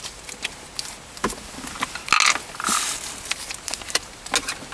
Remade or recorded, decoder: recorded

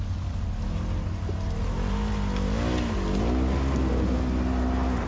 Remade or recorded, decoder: recorded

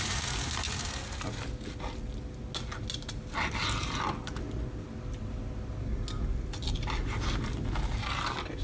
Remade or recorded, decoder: recorded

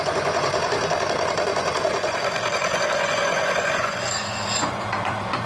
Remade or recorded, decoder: remade, vocoder, Vocos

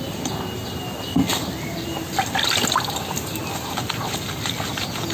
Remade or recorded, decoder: recorded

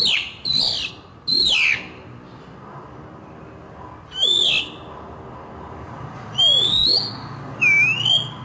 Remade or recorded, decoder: recorded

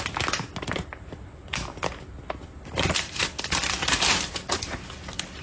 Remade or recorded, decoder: recorded